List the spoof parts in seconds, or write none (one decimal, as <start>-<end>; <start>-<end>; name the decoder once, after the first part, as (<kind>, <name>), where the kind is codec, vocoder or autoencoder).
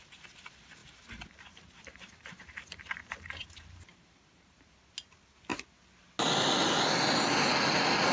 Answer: 0.8-4.7 (vocoder, BigVGAN v2)